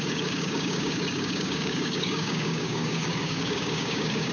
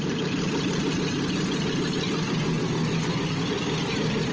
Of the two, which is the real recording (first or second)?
second